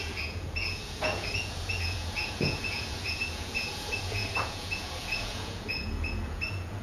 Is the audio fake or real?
fake